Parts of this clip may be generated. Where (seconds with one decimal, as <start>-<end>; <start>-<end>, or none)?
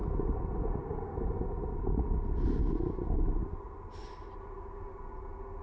none